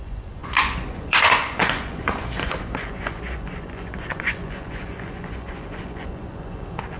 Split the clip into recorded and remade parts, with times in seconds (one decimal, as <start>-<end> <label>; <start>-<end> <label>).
0.0-7.0 remade